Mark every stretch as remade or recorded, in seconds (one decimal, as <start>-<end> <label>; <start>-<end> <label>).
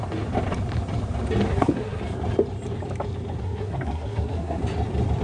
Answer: 0.0-1.5 recorded; 1.5-2.0 remade; 2.0-3.4 recorded; 3.4-4.6 remade; 4.6-5.2 recorded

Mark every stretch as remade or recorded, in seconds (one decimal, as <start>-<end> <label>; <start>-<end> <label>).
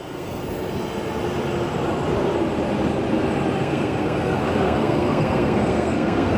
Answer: 0.0-0.4 remade; 0.4-3.6 recorded; 3.6-6.4 remade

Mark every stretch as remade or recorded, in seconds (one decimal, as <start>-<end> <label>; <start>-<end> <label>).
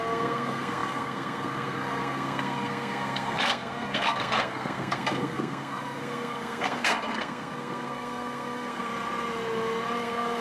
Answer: 0.0-8.9 remade; 8.9-10.0 recorded; 10.0-10.4 remade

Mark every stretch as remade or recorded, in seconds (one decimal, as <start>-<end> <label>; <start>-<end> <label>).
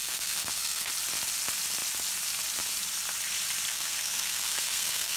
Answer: 0.0-0.9 remade; 0.9-3.7 recorded; 3.7-5.2 remade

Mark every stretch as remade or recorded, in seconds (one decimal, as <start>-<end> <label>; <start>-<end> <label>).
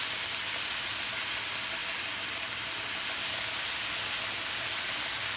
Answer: 0.0-5.4 recorded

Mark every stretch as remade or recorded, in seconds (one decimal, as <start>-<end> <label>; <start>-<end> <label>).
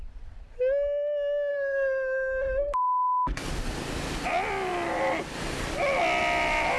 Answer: 0.0-1.5 recorded; 1.5-3.5 remade; 3.5-6.8 recorded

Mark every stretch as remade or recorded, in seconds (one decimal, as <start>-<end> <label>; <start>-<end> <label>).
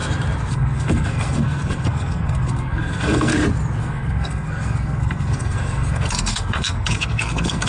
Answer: 0.0-0.5 recorded; 0.5-3.3 remade; 3.3-3.8 recorded; 3.8-7.7 remade